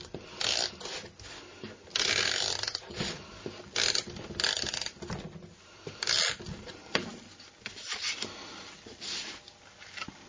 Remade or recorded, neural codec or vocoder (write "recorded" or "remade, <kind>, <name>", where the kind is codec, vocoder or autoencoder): recorded